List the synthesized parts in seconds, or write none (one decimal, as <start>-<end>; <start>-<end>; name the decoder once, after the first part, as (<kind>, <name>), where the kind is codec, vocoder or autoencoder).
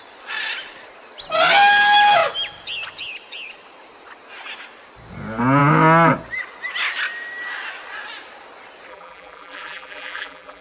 8.9-10.6 (vocoder, BigVGAN v2)